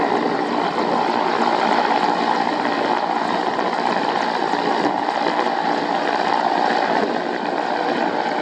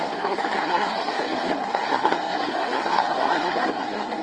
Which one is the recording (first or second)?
first